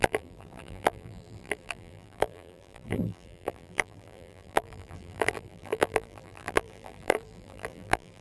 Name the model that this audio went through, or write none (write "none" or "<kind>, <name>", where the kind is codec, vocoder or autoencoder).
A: vocoder, BigVGAN v2